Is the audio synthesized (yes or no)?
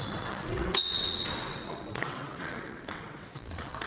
yes